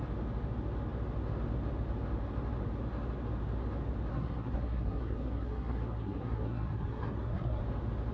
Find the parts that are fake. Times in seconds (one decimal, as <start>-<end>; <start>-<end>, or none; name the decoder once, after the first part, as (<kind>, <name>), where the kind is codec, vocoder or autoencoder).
4.1-7.6 (codec, SNAC)